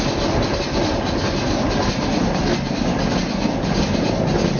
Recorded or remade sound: recorded